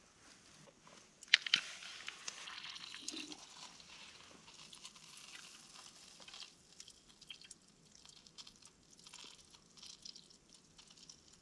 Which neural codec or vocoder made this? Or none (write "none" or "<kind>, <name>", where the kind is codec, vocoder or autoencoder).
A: none